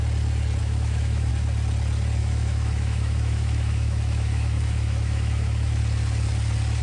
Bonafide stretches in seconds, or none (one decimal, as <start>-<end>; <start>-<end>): 0.0-0.6; 1.3-2.2; 5.8-6.8